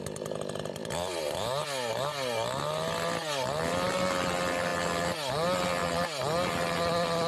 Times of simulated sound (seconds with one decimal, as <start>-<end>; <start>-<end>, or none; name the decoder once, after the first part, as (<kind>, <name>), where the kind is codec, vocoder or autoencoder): none